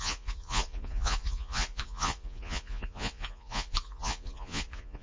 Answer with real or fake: fake